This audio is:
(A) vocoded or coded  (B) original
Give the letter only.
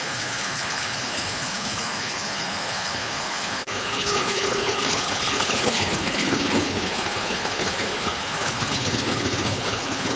A